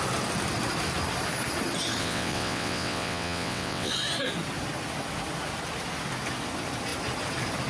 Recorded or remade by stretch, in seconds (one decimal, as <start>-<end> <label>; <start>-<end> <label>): 0.0-2.0 recorded; 2.0-3.9 remade; 3.9-7.7 recorded

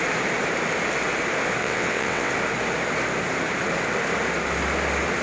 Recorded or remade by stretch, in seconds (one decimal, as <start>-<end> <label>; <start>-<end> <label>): 0.0-1.6 recorded; 1.6-2.3 remade; 2.3-5.2 recorded

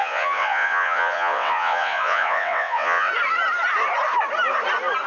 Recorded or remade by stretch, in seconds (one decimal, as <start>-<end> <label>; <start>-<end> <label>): 0.0-3.1 remade; 3.1-5.1 recorded

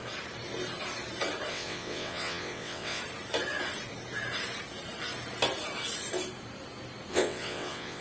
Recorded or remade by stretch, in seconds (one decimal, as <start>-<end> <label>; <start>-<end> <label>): 0.0-1.5 recorded; 1.5-3.0 remade; 3.0-7.1 recorded; 7.1-8.0 remade

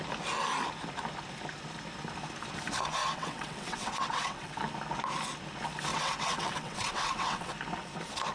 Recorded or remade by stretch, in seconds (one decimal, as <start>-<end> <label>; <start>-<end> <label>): 0.0-3.0 recorded; 3.0-4.6 remade; 4.6-5.9 recorded; 5.9-7.5 remade; 7.5-8.3 recorded

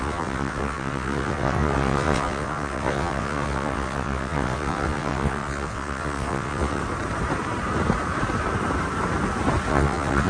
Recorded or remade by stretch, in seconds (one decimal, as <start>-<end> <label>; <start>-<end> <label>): 0.0-6.8 remade; 6.8-9.7 recorded; 9.7-10.3 remade